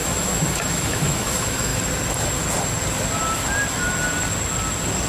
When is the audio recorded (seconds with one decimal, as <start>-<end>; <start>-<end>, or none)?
1.7-5.1

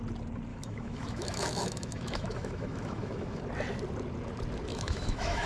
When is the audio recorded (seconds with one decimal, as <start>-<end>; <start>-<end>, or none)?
0.0-0.5; 3.4-4.7

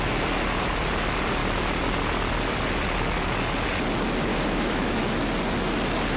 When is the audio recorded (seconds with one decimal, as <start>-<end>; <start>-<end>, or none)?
0.0-4.3; 5.0-6.2